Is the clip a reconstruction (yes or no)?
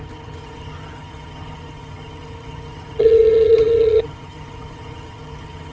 yes